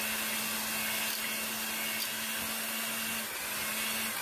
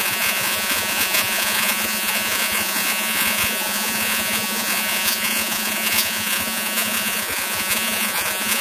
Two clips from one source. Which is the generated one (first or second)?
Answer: second